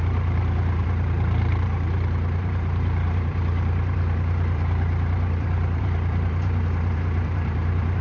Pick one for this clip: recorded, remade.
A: remade